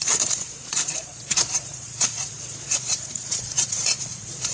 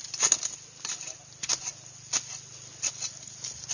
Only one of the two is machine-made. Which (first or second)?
first